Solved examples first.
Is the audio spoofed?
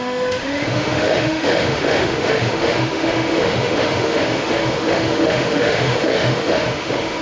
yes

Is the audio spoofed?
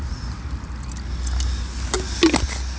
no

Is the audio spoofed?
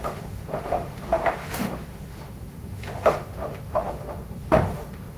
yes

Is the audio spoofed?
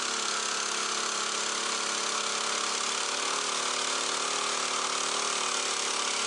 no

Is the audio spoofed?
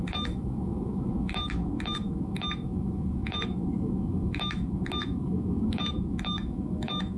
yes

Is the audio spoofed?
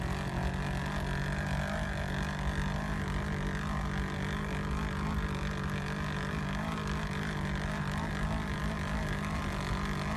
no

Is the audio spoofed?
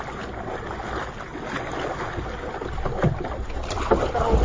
no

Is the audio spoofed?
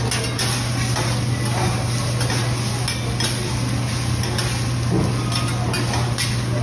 no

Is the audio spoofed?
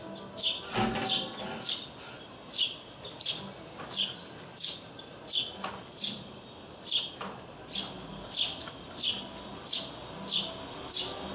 no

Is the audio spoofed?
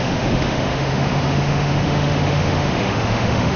yes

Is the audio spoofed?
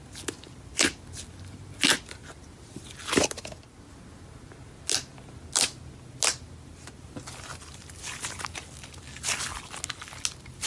no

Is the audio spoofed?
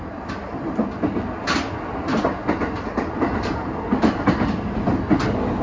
no